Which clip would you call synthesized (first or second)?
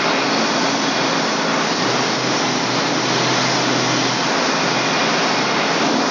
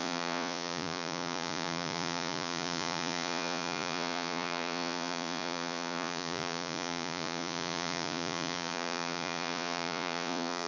second